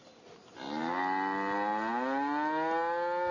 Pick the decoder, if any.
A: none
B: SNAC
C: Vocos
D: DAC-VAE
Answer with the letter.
A